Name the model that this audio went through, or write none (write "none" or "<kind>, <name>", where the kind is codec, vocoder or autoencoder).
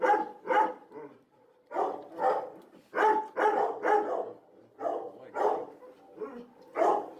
none